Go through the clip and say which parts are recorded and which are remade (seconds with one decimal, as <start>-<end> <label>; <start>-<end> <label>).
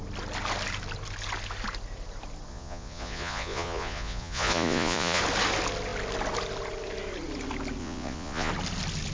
0.0-2.5 recorded; 2.5-5.2 remade; 5.2-7.8 recorded; 7.8-8.5 remade; 8.5-9.1 recorded